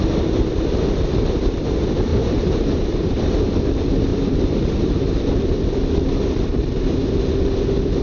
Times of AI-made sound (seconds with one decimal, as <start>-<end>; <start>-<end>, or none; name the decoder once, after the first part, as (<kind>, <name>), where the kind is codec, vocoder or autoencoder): 2.1-3.3 (vocoder, BigVGAN v2); 4.1-5.4

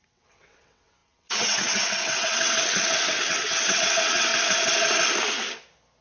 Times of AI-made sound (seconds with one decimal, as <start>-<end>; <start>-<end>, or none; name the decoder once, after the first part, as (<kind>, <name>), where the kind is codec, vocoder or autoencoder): 0.0-4.3 (vocoder, WaveNeXt)

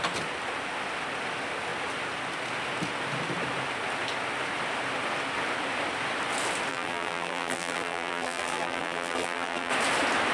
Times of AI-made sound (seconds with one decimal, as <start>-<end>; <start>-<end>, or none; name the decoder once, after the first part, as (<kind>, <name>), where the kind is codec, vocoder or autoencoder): 6.7-9.7 (vocoder, BigVGAN v2)

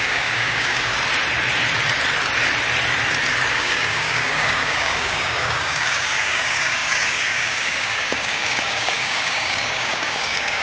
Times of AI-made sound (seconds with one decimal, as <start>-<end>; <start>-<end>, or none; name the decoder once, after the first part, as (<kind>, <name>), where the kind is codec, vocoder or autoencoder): 0.0-0.9 (codec, DAC); 3.5-10.6

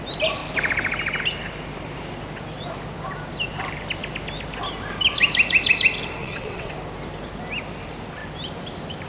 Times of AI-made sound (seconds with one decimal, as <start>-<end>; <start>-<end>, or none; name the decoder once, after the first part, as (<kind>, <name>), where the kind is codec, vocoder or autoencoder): 6.2-6.7 (vocoder, WaveNeXt)

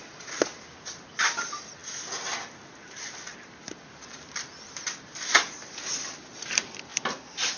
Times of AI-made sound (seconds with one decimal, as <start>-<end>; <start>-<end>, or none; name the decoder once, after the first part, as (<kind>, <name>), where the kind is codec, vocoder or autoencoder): none